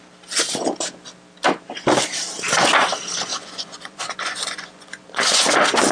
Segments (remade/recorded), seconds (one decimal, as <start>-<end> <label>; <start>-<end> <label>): 0.0-3.3 recorded; 3.3-5.4 remade; 5.4-5.9 recorded